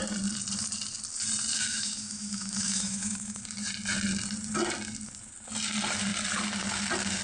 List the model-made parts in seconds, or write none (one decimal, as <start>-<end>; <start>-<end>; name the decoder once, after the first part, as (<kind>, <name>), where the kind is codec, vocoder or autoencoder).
1.5-3.4 (autoencoder, DAC-VAE)